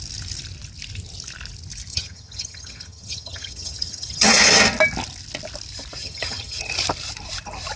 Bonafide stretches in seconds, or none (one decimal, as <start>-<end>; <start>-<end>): 0.0-1.9; 4.3-6.0; 6.6-7.8